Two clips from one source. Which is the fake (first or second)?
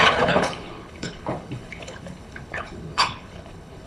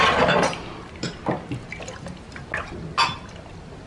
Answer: first